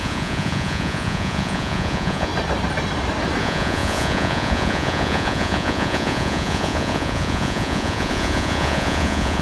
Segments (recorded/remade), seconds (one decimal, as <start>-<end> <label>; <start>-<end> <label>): 0.0-2.3 remade; 2.3-3.4 recorded; 3.4-9.4 remade

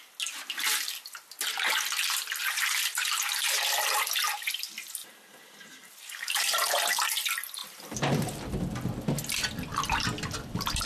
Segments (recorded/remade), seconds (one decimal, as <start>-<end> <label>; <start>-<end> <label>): 0.0-2.4 recorded; 2.4-3.6 remade; 3.6-5.0 recorded; 5.0-6.7 remade; 6.7-7.6 recorded; 7.6-8.4 remade; 8.4-10.9 recorded

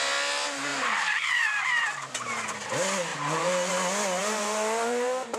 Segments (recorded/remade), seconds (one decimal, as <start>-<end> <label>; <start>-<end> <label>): 0.0-0.7 recorded; 0.7-1.8 remade; 1.8-3.1 recorded; 3.1-3.7 remade; 3.7-4.2 recorded; 4.2-5.4 remade

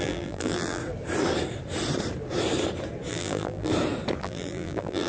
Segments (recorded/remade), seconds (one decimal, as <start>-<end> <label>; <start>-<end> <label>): 0.0-0.8 remade; 0.8-3.1 recorded; 3.1-3.7 remade; 3.7-4.2 recorded; 4.2-5.1 remade

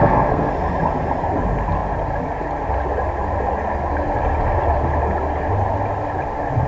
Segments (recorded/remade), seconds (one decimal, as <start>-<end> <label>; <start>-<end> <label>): 0.0-0.5 remade; 0.5-6.7 recorded